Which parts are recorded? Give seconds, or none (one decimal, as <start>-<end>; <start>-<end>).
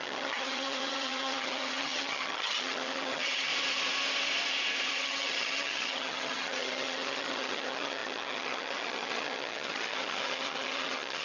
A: 3.5-4.9